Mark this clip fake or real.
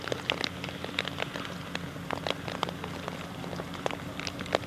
real